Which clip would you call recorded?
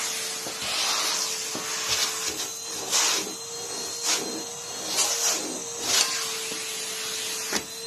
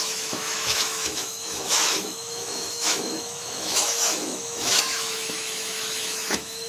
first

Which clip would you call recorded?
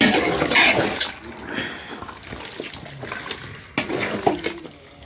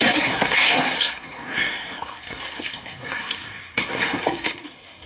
first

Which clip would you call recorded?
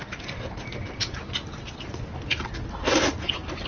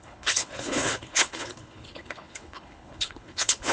first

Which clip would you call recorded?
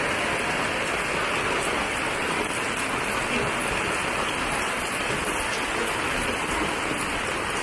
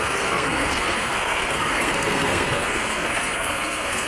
first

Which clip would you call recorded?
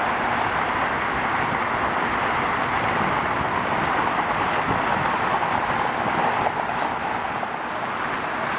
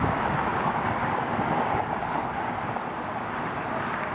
first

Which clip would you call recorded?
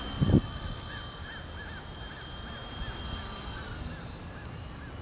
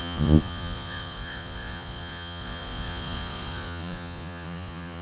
first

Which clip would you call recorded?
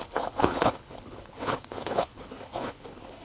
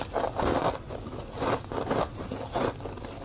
second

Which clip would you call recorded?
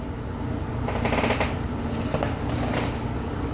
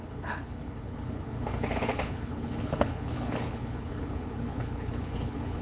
first